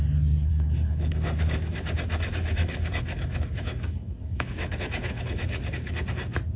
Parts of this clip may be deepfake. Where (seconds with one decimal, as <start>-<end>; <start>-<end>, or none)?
0.5-1.9; 2.3-6.0